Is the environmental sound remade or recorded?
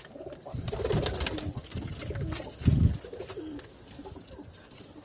recorded